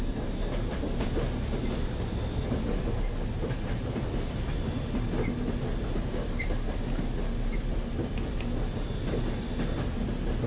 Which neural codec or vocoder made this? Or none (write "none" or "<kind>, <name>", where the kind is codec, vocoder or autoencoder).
none